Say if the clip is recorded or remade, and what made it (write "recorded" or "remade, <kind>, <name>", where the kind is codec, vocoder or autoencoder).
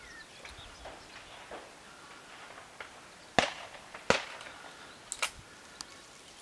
recorded